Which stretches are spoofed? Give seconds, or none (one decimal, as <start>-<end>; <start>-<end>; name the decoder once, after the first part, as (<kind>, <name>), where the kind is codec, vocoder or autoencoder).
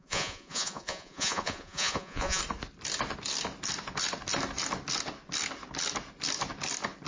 0.0-2.4 (vocoder, Vocos)